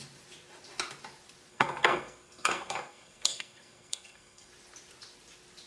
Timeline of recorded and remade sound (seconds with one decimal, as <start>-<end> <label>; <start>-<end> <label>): 0.0-1.5 recorded; 1.5-4.5 remade; 4.5-5.7 recorded